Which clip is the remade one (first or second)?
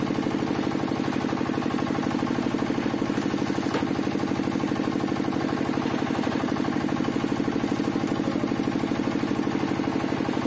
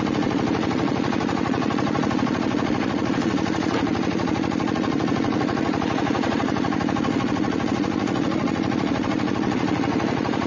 second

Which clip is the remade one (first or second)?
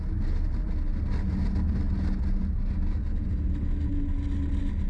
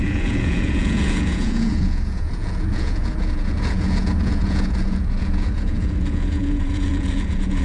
second